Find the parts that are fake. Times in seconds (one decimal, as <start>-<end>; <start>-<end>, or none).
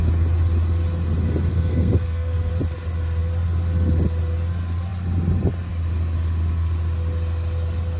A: 1.5-2.5